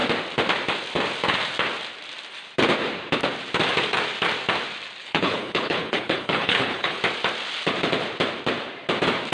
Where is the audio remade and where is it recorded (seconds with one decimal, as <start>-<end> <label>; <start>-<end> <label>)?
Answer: 0.0-5.0 recorded; 5.0-7.0 remade; 7.0-9.3 recorded